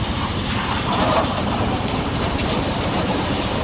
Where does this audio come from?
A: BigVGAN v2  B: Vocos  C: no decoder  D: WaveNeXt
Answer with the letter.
A